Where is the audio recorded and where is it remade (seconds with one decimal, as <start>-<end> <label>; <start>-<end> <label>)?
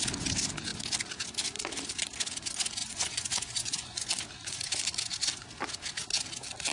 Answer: 0.0-2.8 recorded; 2.8-4.1 remade; 4.1-6.7 recorded